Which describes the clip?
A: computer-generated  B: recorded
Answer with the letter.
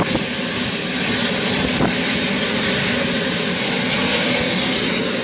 B